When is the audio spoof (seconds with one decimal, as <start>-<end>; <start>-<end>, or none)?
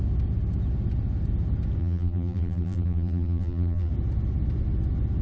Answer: 1.8-3.9